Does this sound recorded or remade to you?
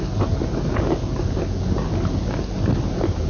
recorded